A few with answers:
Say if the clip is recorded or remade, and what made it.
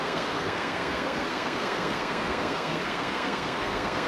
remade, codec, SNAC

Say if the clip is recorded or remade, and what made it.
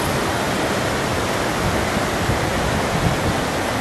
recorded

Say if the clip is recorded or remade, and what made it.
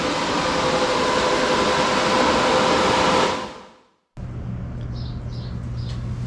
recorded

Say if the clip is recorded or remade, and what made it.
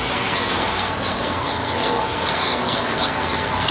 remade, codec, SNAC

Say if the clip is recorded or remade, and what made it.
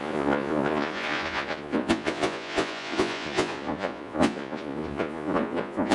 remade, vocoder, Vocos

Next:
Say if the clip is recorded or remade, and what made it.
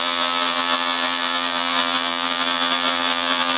remade, vocoder, BigVGAN v2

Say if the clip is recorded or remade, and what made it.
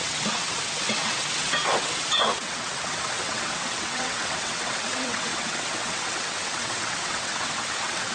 remade, vocoder, WaveNeXt